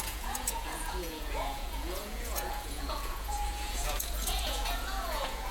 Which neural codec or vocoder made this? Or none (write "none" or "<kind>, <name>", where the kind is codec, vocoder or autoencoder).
vocoder, Vocos